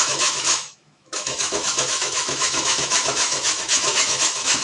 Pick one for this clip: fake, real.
fake